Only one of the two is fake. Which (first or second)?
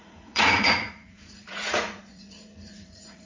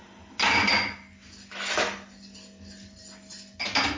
first